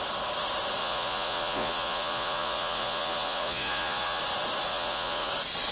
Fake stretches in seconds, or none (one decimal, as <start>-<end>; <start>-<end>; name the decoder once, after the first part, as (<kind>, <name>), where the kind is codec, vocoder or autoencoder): 0.8-4.2 (vocoder, Vocos); 4.7-5.3